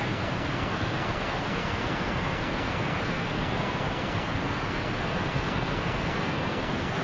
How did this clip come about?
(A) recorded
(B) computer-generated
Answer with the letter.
B